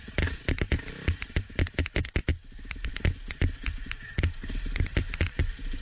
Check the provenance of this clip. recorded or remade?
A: recorded